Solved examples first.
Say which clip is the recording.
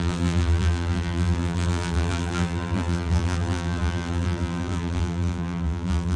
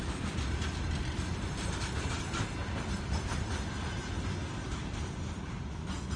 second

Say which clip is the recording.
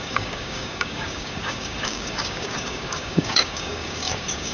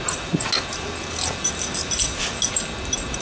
second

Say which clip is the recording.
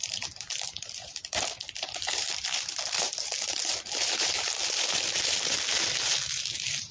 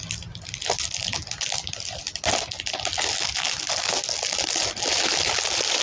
second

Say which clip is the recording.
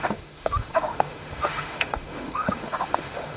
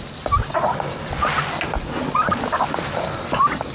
second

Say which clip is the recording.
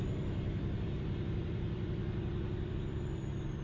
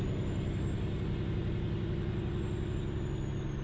second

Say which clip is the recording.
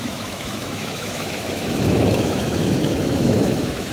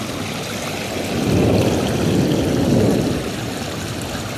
second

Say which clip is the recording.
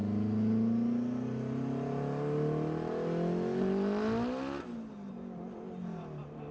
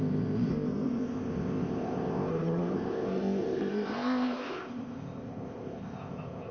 first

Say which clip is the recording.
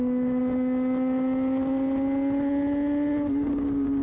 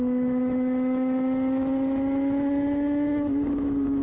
first